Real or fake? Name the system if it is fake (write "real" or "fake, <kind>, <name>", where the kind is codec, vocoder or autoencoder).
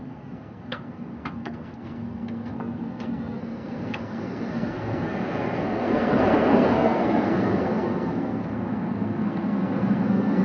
fake, codec, SNAC